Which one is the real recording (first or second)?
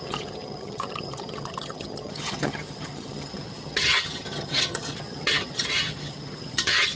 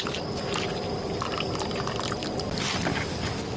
second